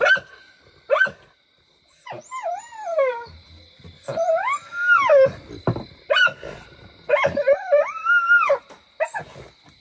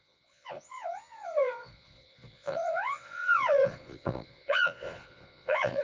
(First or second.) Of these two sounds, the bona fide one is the first